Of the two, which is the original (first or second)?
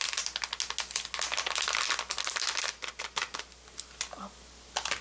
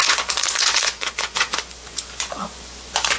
first